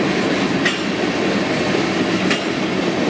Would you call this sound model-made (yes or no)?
no